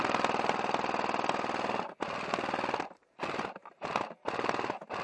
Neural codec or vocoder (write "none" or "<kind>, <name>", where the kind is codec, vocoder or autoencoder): none